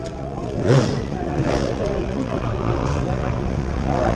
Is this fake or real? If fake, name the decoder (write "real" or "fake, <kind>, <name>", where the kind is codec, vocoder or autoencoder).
fake, vocoder, WaveNeXt